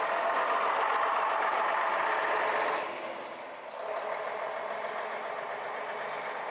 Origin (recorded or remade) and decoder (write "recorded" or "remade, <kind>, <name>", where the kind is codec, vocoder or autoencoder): recorded